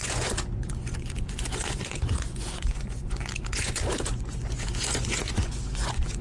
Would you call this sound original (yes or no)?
no